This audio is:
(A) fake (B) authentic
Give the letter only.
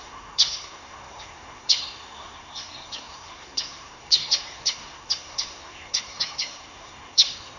A